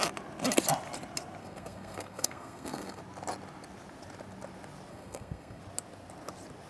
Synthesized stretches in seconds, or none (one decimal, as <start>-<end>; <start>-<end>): 1.4-3.0; 4.9-5.6